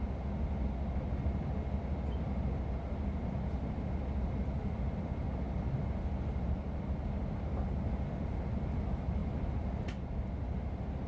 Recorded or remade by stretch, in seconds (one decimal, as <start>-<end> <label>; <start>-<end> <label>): 0.0-11.1 recorded